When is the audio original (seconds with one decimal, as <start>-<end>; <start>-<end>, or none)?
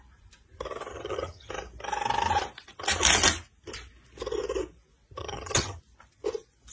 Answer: 0.0-0.9; 1.5-5.2; 5.8-6.7